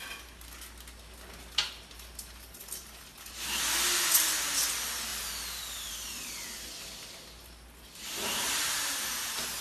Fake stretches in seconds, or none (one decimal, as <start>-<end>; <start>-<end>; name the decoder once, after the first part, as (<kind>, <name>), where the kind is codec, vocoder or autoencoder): none